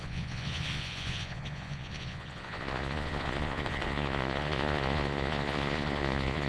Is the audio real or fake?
fake